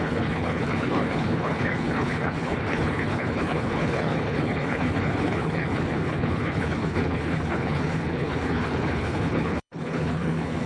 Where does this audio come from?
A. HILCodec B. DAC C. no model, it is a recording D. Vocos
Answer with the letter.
A